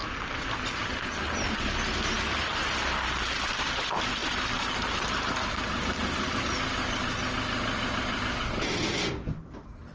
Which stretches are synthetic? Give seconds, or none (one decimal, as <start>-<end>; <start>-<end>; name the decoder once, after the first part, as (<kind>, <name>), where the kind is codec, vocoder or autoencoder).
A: none